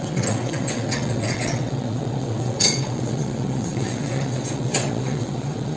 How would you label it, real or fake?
fake